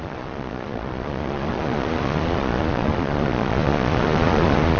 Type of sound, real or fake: fake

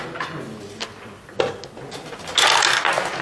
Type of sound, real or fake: real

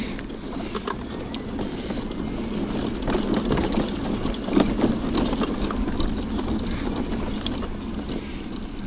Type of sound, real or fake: real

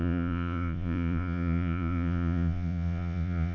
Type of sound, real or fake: fake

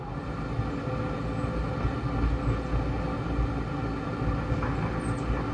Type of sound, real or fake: real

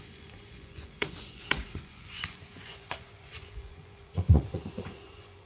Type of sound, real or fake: fake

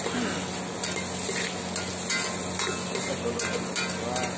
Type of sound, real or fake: real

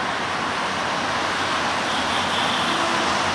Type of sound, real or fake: real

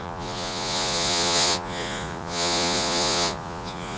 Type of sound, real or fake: fake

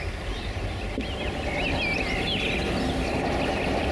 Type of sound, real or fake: real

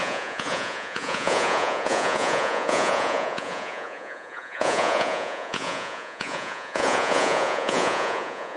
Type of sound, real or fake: fake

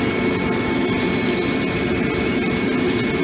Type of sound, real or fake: real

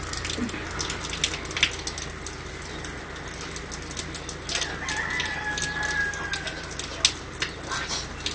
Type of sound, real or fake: real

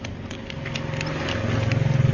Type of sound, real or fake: real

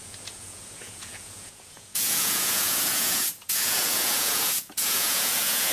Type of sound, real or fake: fake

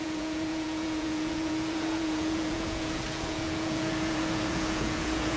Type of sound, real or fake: fake